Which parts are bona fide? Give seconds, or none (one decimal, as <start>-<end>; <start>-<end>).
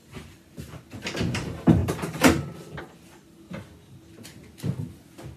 0.0-5.4